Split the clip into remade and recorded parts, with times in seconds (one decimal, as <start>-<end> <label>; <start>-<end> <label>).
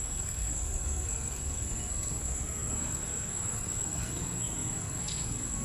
0.0-5.6 remade